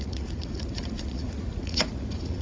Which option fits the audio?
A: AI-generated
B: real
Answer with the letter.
A